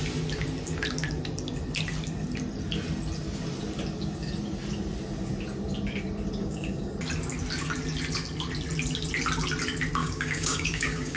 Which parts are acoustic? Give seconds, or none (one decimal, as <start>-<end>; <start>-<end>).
0.0-6.4; 6.9-10.0